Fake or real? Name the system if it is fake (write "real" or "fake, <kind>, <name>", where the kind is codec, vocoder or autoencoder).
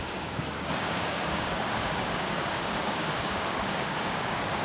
fake, codec, DAC